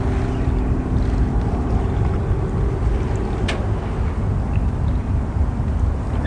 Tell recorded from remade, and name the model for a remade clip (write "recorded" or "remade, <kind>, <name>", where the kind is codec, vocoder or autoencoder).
recorded